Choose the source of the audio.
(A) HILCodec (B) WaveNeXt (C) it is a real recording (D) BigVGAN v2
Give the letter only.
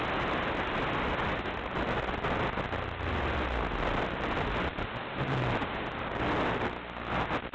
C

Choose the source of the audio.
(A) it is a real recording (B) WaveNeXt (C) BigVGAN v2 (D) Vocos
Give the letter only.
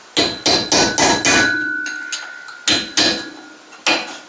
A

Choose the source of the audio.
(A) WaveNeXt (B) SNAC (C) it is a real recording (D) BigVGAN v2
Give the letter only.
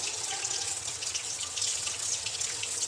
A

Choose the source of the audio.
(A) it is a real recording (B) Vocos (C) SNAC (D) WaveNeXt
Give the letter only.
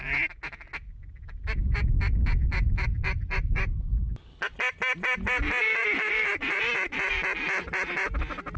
A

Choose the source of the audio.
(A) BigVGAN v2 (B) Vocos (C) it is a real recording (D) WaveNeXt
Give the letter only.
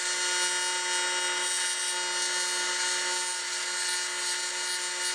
C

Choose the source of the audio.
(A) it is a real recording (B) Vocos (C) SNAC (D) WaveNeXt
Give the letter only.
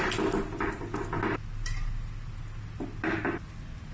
A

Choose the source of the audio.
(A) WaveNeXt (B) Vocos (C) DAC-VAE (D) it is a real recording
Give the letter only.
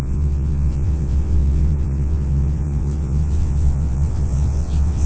A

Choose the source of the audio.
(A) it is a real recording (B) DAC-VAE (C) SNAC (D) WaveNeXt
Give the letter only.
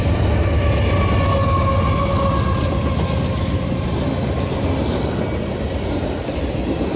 A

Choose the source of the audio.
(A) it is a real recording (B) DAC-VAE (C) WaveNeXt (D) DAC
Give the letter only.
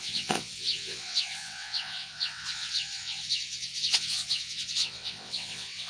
C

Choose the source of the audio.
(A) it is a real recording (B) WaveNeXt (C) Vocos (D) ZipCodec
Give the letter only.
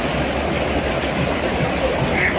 A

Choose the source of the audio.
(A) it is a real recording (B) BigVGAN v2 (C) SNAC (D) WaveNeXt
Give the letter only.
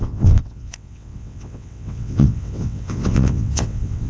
D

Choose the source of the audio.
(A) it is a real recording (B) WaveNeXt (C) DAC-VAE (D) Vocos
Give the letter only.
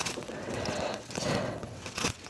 B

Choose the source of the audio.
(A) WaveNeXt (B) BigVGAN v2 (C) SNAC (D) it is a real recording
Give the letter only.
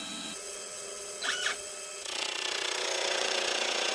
A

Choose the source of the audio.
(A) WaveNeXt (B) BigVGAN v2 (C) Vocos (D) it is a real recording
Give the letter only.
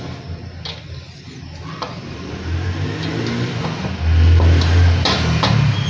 D